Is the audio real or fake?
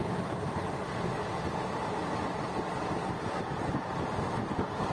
real